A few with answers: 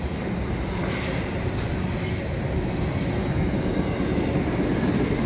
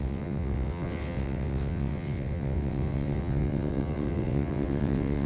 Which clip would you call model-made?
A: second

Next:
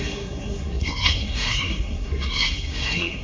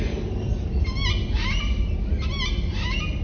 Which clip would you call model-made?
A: first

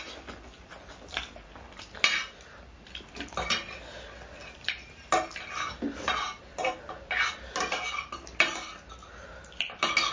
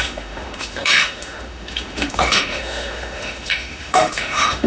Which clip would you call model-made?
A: second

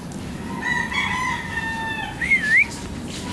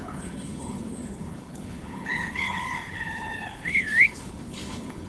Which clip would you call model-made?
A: second